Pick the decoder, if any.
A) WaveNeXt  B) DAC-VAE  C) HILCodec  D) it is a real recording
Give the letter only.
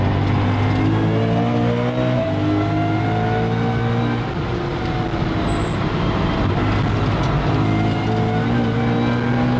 D